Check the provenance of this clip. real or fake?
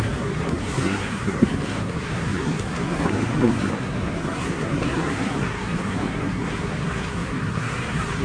fake